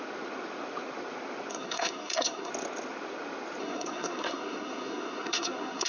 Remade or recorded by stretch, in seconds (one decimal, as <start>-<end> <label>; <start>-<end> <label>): 0.0-1.5 recorded; 1.5-2.5 remade; 2.5-3.6 recorded; 3.6-5.9 remade